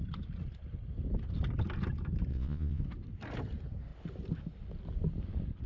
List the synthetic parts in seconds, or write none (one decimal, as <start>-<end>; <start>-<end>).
2.3-2.8